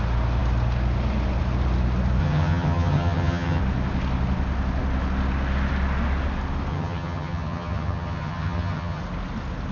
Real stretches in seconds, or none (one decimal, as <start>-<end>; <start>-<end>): 0.0-2.2; 3.6-6.7; 9.0-9.7